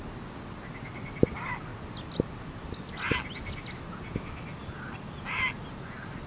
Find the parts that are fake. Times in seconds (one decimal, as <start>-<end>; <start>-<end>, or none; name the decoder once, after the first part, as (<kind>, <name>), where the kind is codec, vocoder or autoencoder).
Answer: none